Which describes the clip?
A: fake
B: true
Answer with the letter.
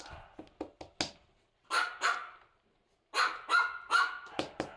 B